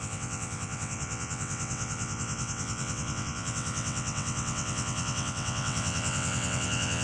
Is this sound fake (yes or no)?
yes